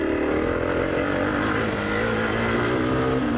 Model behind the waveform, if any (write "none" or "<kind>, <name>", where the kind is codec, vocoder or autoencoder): none